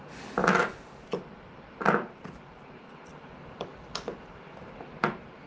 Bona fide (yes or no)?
yes